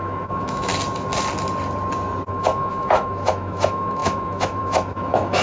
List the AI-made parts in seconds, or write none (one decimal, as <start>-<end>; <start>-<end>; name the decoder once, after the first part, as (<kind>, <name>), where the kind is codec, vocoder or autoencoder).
0.0-0.7 (autoencoder, DAC-VAE); 2.3-5.4